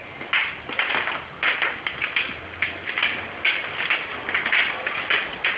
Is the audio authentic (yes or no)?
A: yes